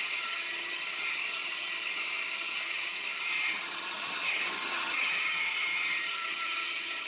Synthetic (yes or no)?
yes